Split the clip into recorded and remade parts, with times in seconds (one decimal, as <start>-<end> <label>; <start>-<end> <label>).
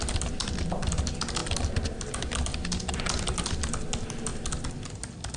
0.0-5.4 recorded